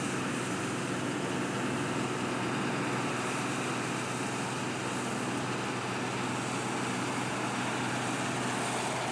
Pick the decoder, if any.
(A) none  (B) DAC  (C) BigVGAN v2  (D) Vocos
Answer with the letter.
A